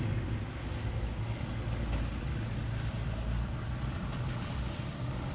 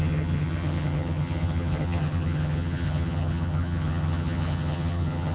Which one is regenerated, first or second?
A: second